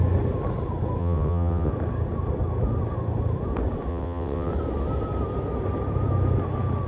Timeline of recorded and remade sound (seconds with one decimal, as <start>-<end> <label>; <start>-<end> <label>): 0.0-1.0 recorded; 1.0-1.7 remade; 1.7-3.9 recorded; 3.9-4.5 remade; 4.5-6.9 recorded